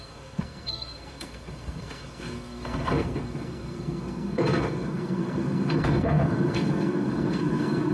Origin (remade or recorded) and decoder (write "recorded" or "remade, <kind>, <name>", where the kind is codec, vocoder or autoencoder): remade, codec, SNAC